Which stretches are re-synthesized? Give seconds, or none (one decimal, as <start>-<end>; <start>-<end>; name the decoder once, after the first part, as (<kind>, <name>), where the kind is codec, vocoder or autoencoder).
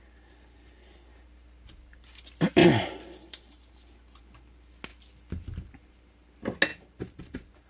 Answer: 2.6-4.2 (vocoder, BigVGAN v2); 4.9-5.6